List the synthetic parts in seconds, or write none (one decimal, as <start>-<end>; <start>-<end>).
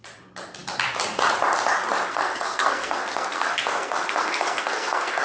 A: 2.1-5.2